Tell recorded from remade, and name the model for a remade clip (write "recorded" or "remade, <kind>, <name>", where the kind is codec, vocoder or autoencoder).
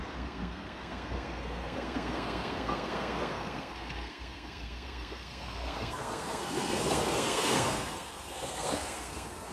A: remade, codec, SNAC